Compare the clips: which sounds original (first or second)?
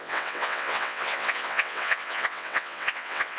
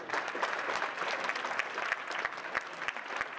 second